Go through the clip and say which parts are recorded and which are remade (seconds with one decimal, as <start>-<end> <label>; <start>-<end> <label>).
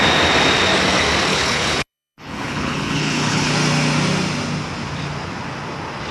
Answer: 0.0-1.3 recorded; 1.3-3.5 remade; 3.5-6.1 recorded